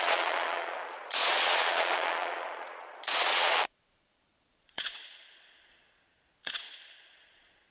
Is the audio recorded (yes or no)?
no